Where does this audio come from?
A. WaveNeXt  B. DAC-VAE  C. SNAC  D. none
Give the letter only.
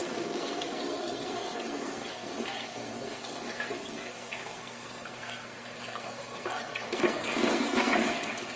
C